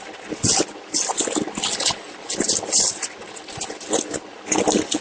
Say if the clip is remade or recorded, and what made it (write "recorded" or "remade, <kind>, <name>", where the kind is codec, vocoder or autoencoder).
recorded